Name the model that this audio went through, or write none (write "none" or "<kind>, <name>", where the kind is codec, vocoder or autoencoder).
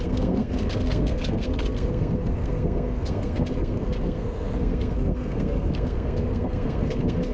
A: codec, SNAC